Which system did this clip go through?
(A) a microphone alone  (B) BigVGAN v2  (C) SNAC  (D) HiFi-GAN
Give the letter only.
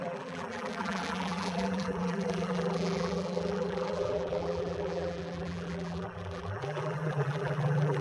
B